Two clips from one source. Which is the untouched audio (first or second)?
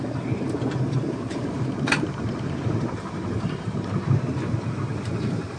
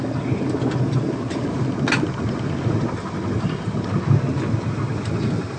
second